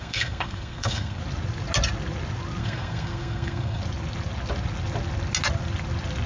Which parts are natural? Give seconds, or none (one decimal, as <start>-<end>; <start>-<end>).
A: 1.2-2.6; 3.8-6.3